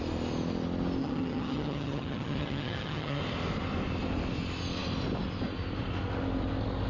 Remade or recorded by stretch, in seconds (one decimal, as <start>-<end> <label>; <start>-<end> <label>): 0.0-1.0 recorded; 1.0-3.2 remade; 3.2-6.9 recorded